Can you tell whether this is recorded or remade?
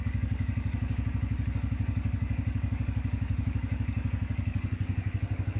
remade